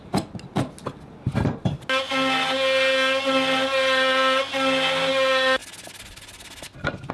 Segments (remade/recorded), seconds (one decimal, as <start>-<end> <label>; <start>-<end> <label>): 0.0-7.1 recorded